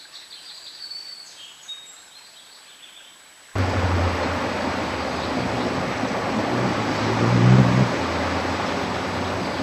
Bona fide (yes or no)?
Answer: yes